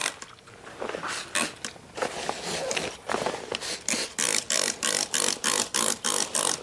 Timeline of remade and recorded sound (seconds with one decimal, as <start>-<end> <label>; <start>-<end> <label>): 0.0-6.6 recorded